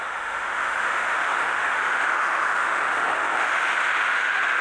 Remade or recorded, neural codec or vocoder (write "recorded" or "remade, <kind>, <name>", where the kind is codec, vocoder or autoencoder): remade, autoencoder, DAC-VAE